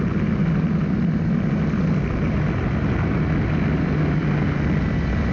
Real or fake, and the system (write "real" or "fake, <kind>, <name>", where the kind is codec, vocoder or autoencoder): real